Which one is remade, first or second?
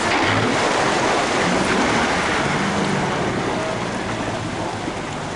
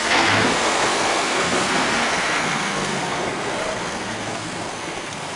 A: second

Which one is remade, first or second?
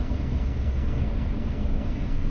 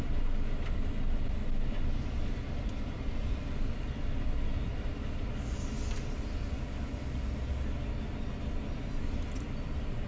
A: first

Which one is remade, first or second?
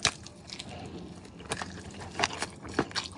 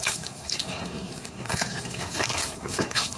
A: second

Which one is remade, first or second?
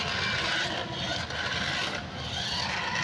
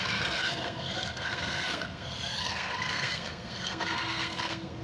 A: second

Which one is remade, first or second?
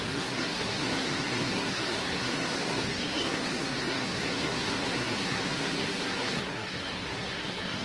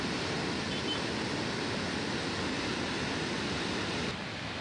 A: first